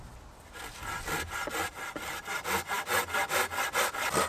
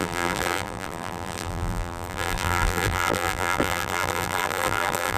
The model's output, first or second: second